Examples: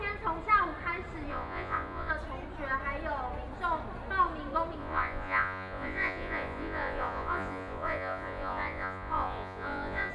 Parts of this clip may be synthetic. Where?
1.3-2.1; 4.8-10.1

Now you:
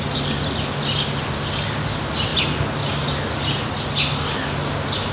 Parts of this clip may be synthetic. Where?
none

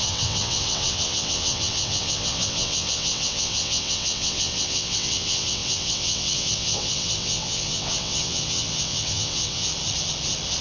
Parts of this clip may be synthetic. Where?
0.0-9.7

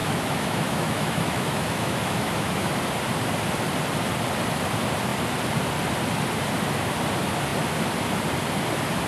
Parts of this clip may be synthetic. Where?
0.0-2.7

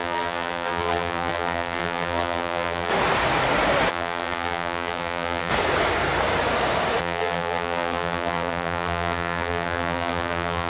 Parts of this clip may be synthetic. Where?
0.0-2.9; 3.9-5.5; 7.0-10.7

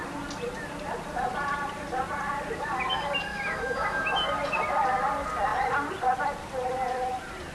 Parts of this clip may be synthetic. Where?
3.3-4.3

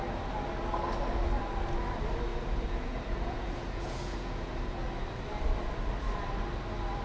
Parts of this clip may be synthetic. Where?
2.3-4.8